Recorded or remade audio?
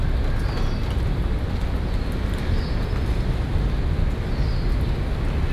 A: recorded